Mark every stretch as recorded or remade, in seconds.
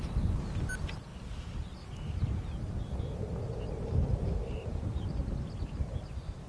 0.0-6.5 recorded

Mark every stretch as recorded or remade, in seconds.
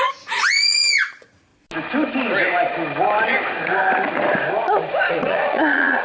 0.0-1.5 remade; 1.5-5.1 recorded; 5.1-6.0 remade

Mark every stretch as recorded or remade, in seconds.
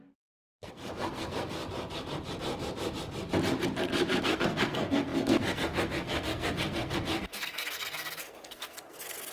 0.0-1.6 remade; 1.6-4.2 recorded; 4.2-9.3 remade